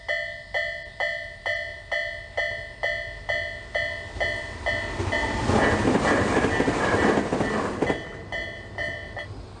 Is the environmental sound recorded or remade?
recorded